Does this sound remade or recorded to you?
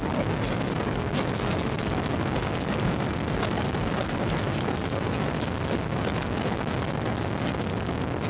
recorded